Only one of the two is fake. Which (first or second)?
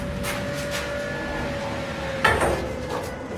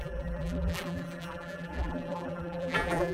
second